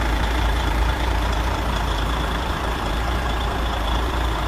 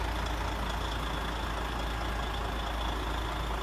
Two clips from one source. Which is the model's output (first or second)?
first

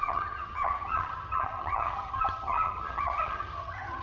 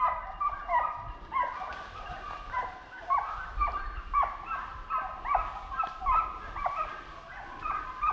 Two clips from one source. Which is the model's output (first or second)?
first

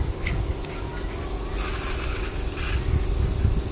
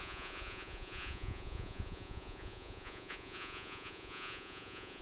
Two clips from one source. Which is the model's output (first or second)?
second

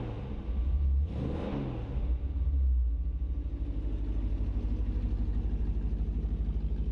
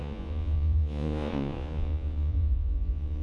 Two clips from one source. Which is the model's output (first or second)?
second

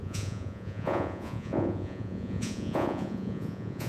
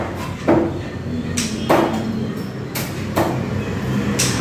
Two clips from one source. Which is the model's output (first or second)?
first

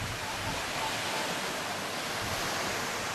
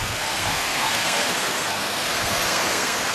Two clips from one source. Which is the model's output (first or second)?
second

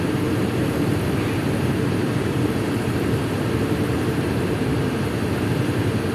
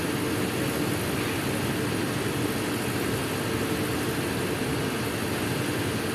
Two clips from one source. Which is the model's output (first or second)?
first